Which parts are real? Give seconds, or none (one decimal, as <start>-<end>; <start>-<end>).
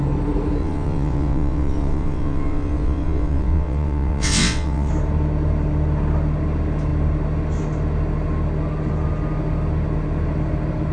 0.0-0.6; 4.9-10.9